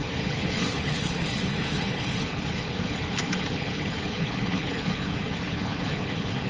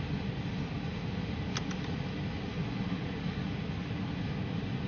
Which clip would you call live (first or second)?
second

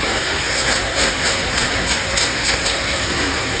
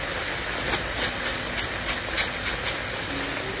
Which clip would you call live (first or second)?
second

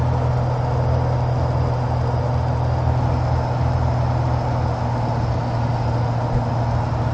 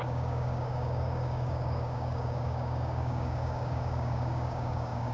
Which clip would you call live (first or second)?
first